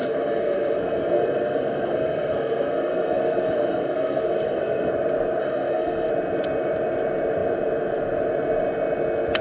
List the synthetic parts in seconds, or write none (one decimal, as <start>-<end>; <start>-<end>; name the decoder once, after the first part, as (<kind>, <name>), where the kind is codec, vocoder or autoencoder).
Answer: 0.0-4.9 (codec, SNAC); 5.4-6.1